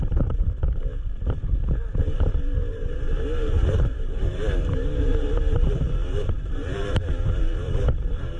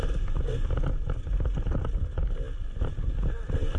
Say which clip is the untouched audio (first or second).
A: second